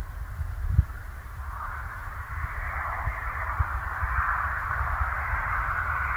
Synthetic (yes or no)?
no